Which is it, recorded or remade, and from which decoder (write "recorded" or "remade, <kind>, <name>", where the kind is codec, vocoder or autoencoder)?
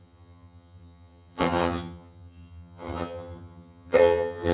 remade, vocoder, HiFi-GAN